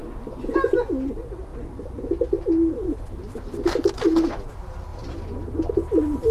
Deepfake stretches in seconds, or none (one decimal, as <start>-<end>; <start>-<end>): 4.9-5.7